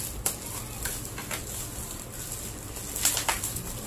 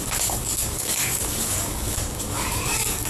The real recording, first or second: first